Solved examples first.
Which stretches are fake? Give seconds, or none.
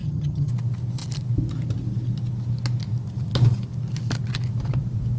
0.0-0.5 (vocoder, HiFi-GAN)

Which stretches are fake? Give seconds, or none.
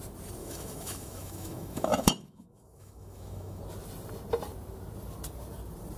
0.4-3.6 (autoencoder, DAC-VAE)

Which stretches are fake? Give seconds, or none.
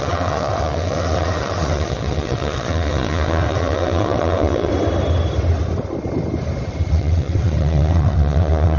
0.0-4.7 (vocoder, WaveNeXt); 6.9-8.8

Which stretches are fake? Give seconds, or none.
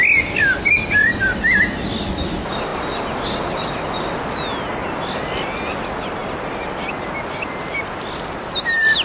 none